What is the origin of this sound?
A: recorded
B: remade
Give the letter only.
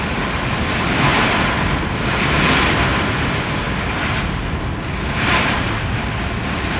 A